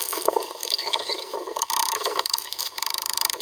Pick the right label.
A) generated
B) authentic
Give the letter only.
A